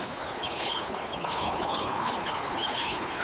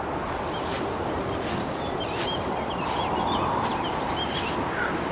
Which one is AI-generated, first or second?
first